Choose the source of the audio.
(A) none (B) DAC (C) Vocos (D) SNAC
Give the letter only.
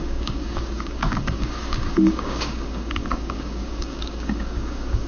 B